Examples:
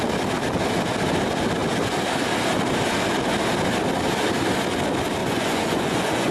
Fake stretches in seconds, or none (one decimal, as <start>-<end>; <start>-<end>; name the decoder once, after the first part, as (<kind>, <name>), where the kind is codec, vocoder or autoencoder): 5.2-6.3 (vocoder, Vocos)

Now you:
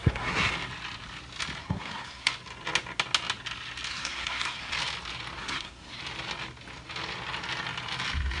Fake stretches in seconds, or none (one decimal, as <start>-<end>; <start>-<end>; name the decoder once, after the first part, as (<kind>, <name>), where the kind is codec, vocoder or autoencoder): 0.0-0.5 (codec, SNAC); 1.6-2.3; 3.9-4.7; 5.4-6.0

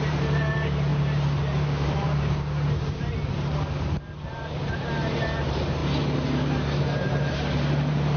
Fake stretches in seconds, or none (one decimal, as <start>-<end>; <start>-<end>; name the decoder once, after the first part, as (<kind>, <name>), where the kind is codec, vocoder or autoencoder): 0.0-5.8 (vocoder, BigVGAN v2); 6.8-8.2